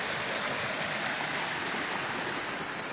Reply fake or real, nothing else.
real